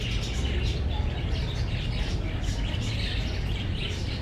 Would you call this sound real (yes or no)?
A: yes